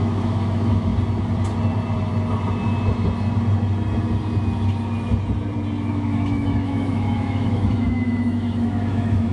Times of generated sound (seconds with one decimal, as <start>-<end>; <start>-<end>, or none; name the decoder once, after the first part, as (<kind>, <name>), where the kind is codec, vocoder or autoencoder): 0.0-0.9 (autoencoder, DAC-VAE); 5.9-9.3